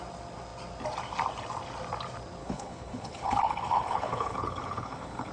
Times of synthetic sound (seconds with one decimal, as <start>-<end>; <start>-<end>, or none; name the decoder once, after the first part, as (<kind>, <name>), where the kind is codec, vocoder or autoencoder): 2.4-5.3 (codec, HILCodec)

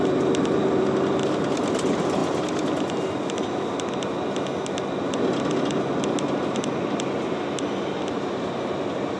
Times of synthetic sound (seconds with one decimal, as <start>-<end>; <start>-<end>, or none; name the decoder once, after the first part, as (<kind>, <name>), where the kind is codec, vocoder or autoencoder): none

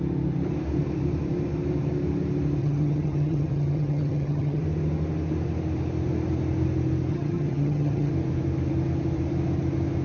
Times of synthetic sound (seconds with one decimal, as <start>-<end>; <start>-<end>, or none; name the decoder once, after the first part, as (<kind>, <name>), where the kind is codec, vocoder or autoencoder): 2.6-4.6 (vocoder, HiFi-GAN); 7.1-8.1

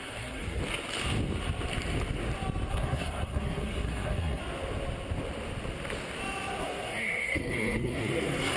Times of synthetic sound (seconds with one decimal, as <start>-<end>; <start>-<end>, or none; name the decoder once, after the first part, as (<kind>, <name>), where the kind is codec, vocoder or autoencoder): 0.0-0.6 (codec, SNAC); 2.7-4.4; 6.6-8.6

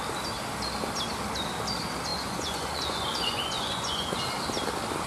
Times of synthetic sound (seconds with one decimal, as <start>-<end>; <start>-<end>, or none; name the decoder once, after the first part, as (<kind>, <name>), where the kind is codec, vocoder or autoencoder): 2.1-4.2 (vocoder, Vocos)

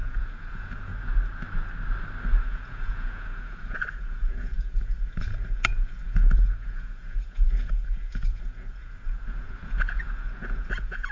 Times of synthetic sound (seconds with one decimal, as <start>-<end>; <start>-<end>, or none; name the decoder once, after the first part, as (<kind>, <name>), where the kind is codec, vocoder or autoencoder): 0.0-0.9 (vocoder, Vocos); 2.4-11.1

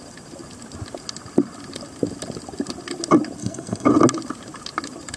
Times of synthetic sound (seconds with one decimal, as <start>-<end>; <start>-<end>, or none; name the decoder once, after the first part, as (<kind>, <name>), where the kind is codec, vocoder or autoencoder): 3.4-3.9 (codec, SNAC)